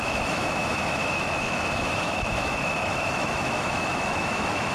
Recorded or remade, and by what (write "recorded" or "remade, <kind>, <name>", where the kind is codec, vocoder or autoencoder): remade, autoencoder, DAC-VAE